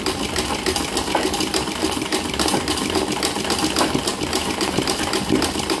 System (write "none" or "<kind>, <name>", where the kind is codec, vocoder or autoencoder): none